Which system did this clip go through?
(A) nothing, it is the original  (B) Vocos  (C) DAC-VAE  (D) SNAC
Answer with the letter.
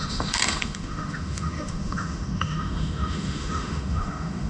C